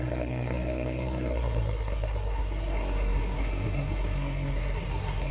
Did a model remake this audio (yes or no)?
yes